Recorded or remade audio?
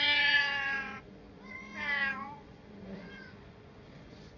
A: remade